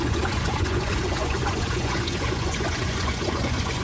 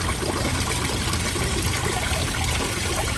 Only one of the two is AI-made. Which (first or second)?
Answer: first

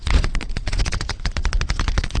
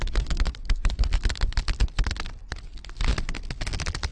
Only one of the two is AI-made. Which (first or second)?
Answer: first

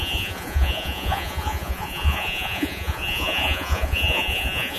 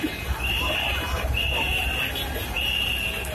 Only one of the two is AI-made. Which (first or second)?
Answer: first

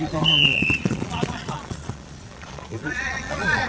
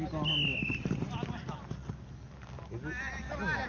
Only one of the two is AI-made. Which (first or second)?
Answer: first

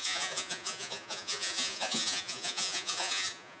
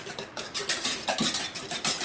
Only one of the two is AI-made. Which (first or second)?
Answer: first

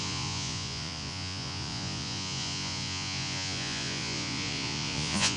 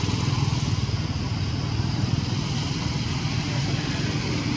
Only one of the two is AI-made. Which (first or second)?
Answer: first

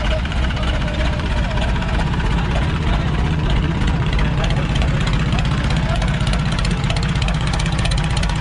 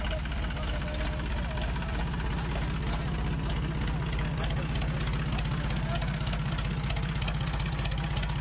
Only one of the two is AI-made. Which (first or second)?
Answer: first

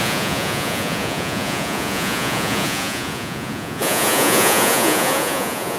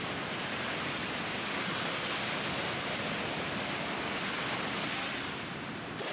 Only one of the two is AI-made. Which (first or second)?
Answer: first